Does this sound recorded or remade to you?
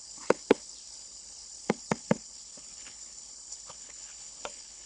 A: remade